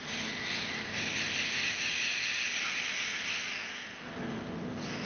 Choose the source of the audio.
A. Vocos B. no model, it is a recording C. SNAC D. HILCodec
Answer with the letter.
B